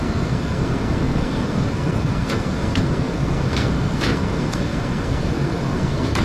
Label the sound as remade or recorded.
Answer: remade